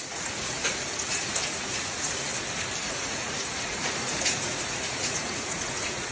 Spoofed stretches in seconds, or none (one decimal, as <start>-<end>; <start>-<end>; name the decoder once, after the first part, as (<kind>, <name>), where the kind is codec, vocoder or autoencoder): 0.0-2.3 (vocoder, Vocos); 2.8-6.1